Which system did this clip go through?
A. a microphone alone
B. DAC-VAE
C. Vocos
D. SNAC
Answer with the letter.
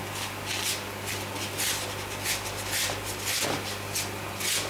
A